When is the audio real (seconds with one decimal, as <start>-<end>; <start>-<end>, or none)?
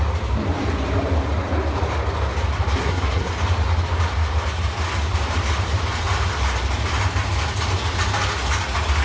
0.0-2.8; 3.3-9.0